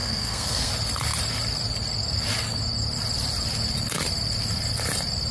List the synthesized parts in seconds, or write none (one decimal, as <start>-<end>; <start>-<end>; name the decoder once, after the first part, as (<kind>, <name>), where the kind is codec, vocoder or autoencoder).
0.0-0.7 (codec, SNAC)